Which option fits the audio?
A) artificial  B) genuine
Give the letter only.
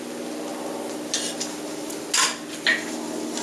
B